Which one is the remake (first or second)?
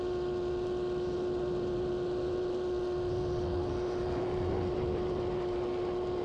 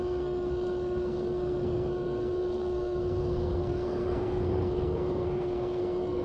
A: second